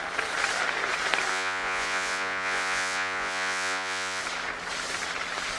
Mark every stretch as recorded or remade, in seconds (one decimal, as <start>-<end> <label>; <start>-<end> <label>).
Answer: 0.0-1.3 recorded; 1.3-4.2 remade; 4.2-5.6 recorded